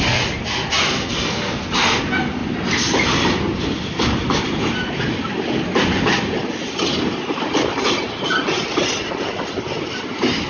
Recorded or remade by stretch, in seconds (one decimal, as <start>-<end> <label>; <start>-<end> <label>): 0.0-1.1 recorded; 1.1-1.7 remade; 1.7-10.5 recorded